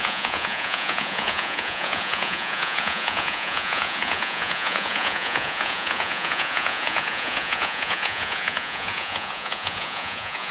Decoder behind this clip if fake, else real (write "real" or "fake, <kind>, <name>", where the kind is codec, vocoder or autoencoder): fake, vocoder, Vocos